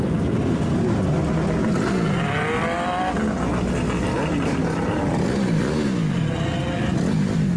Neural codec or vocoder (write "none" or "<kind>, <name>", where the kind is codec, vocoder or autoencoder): none